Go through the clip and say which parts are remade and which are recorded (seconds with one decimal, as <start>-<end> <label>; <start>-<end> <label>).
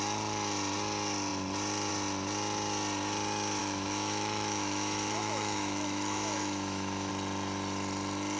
0.0-3.6 recorded; 3.6-7.1 remade; 7.1-8.4 recorded